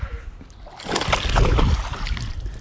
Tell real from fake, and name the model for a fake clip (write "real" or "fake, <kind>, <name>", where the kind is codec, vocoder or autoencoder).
real